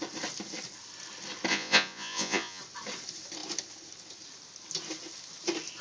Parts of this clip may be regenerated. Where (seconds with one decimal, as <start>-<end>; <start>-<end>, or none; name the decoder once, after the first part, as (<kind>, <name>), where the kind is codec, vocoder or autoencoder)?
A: 1.5-2.6 (vocoder, Vocos)